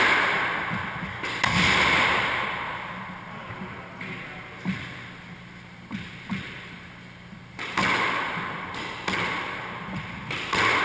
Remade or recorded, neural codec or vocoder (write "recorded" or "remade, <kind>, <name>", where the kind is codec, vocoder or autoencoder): recorded